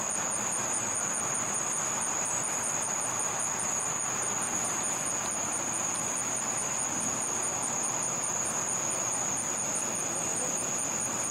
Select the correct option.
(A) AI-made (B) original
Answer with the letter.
B